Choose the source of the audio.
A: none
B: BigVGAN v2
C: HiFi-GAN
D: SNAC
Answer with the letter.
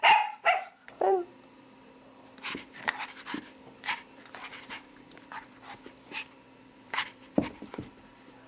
B